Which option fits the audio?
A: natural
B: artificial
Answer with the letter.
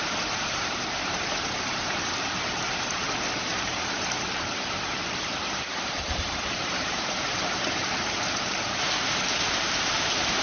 B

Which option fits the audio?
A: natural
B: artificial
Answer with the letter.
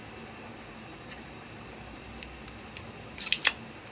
A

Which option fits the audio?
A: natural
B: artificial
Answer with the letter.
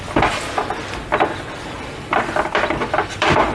B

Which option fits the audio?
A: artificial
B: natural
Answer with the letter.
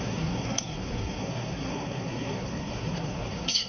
A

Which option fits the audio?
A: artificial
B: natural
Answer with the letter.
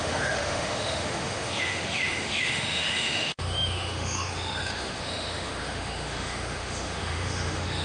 A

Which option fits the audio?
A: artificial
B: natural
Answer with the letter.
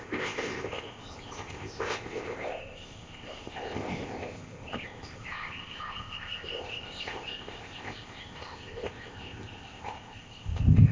A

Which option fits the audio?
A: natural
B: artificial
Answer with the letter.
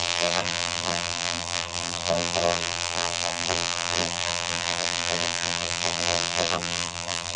B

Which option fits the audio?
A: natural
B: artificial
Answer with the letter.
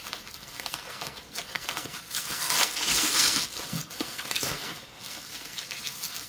B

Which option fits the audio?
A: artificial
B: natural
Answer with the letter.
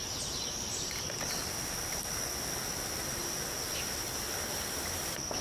B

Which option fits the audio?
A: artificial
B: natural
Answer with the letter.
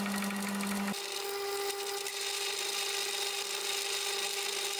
B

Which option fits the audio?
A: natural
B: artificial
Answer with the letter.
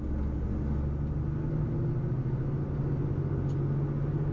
A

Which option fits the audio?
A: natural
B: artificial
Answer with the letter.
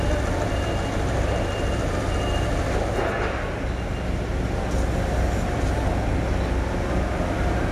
A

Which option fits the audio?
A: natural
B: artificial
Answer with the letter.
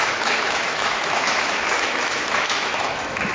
B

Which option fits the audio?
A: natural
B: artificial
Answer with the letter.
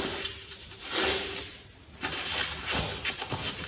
A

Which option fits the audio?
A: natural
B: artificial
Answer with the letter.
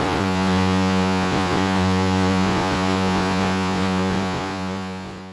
B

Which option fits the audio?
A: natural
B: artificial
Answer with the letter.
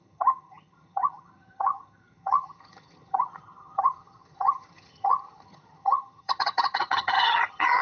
B